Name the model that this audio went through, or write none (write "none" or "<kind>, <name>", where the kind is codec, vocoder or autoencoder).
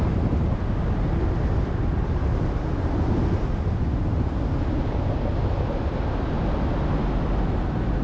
none